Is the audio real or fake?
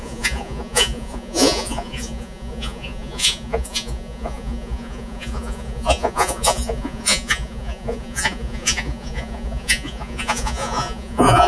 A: fake